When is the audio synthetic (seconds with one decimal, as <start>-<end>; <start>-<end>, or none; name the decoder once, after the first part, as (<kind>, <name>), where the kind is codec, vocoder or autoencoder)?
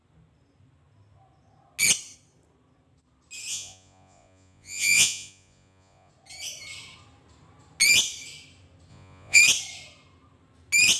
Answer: 3.5-6.1 (vocoder, Vocos); 8.9-9.4